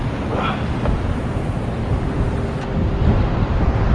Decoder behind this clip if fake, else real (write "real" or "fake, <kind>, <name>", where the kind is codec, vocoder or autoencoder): real